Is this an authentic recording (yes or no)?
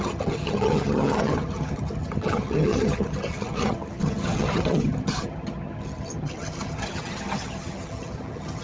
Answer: no